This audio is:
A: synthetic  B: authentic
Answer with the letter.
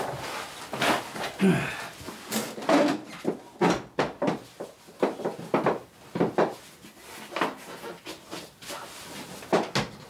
B